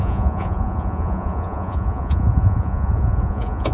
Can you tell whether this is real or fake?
fake